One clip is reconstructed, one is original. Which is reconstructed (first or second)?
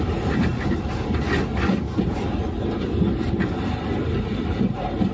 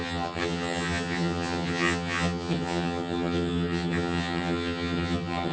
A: second